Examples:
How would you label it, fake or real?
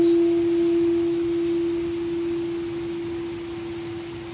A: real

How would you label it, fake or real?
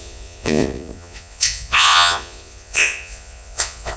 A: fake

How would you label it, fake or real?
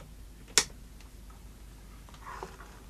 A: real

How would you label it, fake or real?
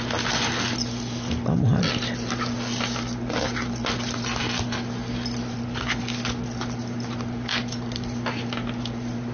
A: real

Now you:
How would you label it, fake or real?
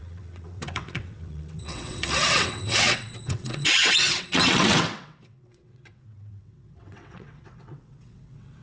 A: fake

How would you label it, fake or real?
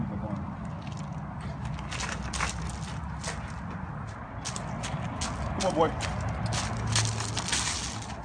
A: real